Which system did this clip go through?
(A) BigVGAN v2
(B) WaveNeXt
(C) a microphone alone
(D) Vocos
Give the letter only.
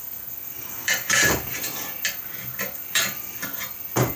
A